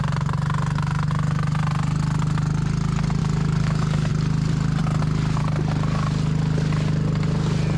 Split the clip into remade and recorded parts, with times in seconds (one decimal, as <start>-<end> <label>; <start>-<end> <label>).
0.0-3.2 recorded; 3.2-4.1 remade; 4.1-7.8 recorded